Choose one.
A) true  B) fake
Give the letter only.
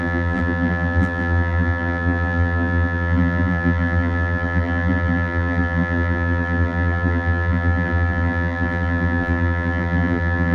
B